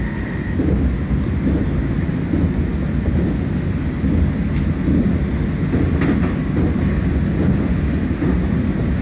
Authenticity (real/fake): real